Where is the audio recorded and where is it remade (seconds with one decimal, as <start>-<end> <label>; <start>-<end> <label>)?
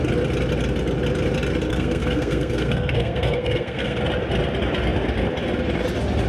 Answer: 0.0-1.7 recorded; 1.7-4.0 remade; 4.0-6.3 recorded